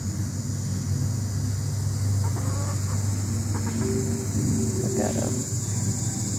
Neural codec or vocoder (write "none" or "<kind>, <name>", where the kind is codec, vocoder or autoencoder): none